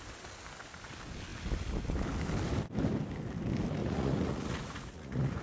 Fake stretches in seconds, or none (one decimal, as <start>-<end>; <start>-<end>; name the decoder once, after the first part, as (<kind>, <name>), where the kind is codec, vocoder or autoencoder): 3.8-5.4 (vocoder, Vocos)